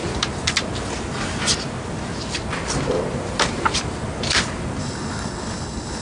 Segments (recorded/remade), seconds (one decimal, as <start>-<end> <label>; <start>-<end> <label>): 0.0-4.8 recorded; 4.8-6.0 remade